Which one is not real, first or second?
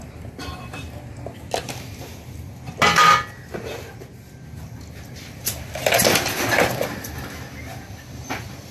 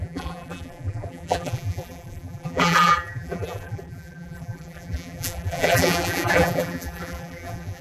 second